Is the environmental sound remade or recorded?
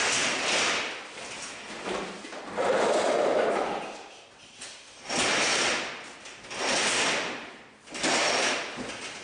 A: recorded